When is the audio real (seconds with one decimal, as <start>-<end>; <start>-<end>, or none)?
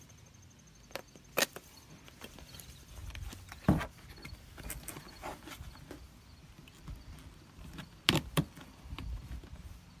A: 0.0-10.0